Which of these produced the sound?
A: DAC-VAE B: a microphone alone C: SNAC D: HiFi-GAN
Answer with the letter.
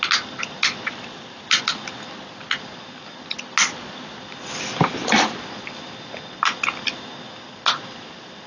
B